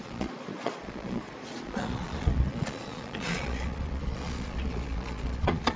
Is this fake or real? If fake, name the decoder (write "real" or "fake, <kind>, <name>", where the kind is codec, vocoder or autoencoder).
fake, vocoder, Vocos